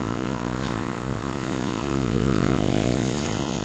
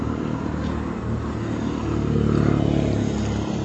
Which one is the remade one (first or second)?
first